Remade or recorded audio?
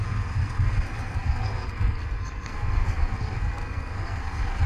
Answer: remade